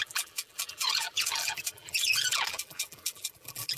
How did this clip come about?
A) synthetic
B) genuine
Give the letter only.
A